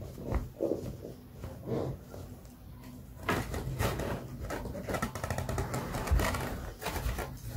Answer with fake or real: real